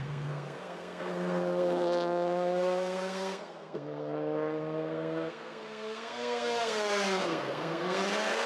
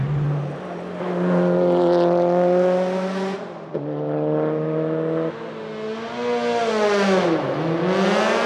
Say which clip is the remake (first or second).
first